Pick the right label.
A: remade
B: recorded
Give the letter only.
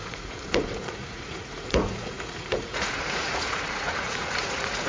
A